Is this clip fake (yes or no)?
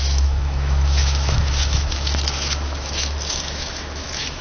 yes